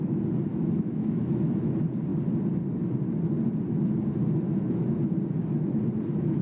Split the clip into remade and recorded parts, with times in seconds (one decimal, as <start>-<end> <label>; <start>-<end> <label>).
0.0-0.5 recorded; 0.5-1.7 remade; 1.7-6.4 recorded

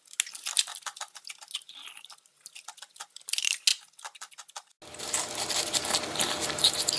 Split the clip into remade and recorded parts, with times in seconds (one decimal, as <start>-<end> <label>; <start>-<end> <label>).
0.0-7.0 recorded

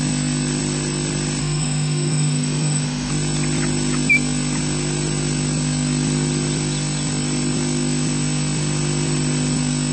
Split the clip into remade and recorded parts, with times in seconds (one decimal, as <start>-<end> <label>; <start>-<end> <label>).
0.0-1.4 recorded; 1.4-3.1 remade; 3.1-9.9 recorded

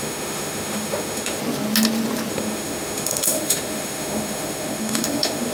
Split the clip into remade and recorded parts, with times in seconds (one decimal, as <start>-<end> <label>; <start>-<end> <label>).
0.0-1.4 remade; 1.4-2.3 recorded; 2.3-5.5 remade

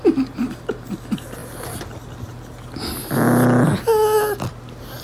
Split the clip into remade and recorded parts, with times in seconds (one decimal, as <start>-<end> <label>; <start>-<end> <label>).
0.0-5.0 recorded